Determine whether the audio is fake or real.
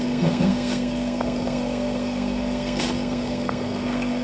fake